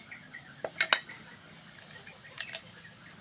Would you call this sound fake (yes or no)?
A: no